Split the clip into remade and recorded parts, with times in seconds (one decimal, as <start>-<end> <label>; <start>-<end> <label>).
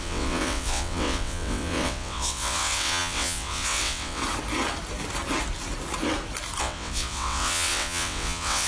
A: 0.0-4.2 remade; 4.2-6.6 recorded; 6.6-8.7 remade